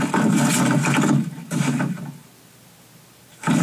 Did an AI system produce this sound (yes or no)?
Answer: no